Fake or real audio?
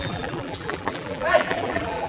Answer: fake